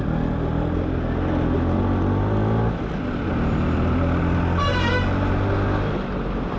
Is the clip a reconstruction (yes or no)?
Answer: no